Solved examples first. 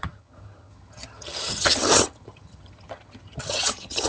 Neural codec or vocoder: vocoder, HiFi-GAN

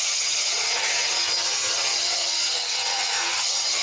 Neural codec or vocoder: vocoder, HiFi-GAN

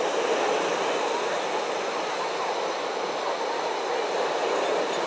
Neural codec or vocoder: none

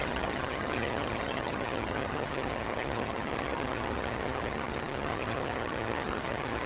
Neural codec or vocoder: vocoder, HiFi-GAN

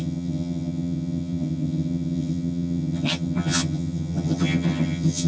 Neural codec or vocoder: vocoder, HiFi-GAN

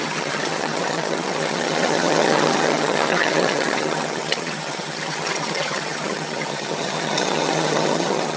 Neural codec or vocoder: vocoder, HiFi-GAN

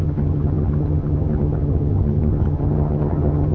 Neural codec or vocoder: vocoder, HiFi-GAN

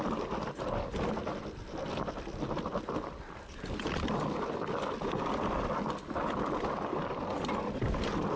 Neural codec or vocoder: none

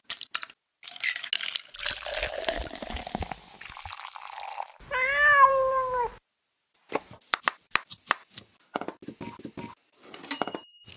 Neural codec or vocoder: none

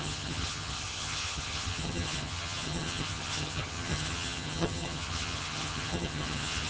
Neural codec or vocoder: vocoder, HiFi-GAN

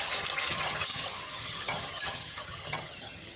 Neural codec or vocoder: vocoder, HiFi-GAN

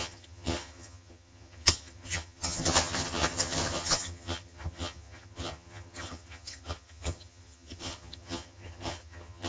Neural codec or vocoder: vocoder, HiFi-GAN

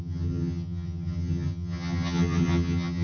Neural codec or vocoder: vocoder, HiFi-GAN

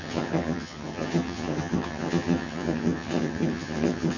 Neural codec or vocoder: vocoder, HiFi-GAN